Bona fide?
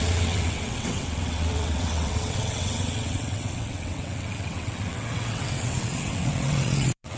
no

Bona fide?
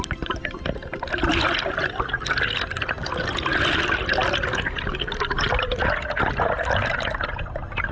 yes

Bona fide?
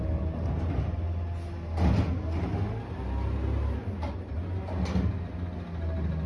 yes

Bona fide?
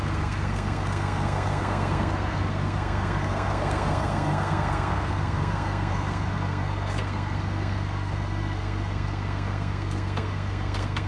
no